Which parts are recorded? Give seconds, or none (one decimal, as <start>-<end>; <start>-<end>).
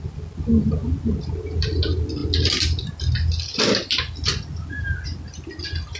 0.0-6.0